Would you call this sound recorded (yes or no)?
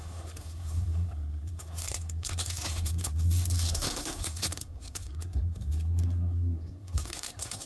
no